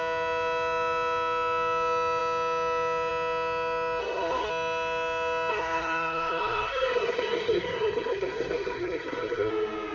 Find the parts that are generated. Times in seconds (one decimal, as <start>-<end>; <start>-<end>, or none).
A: 4.0-4.5; 5.5-9.5